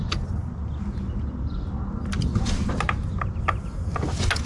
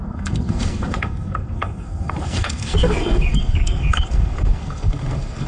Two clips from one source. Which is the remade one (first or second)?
second